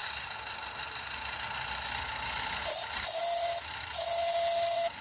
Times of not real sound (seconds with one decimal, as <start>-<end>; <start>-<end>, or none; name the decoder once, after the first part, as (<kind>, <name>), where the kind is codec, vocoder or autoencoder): none